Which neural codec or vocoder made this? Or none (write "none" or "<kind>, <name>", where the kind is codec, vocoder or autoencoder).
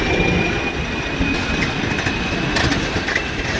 none